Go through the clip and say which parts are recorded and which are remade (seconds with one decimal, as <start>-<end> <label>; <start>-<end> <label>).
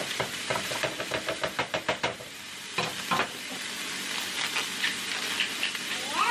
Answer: 0.0-2.1 remade; 2.1-6.3 recorded